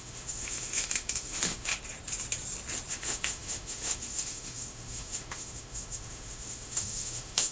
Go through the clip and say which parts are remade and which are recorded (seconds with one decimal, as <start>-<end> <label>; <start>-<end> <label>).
0.0-1.7 remade; 1.7-2.9 recorded; 2.9-7.5 remade